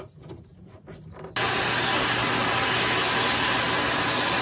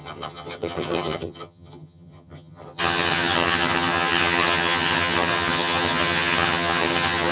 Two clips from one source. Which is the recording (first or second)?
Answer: first